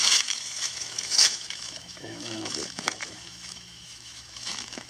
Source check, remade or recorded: remade